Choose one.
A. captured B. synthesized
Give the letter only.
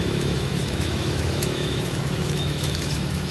B